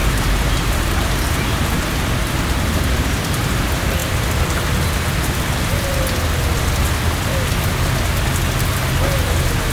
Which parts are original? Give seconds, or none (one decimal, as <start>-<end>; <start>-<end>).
1.8-9.7